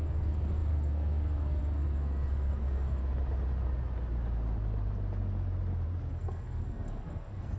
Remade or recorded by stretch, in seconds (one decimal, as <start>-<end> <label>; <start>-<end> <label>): 0.0-3.0 remade; 3.0-6.1 recorded; 6.1-7.6 remade